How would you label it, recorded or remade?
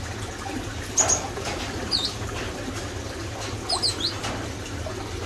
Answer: recorded